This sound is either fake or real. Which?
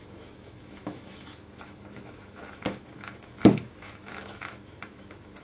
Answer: fake